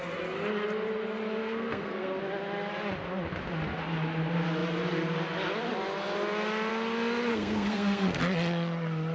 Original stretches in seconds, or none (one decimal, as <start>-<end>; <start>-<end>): 0.0-1.4; 2.2-7.3; 8.2-9.1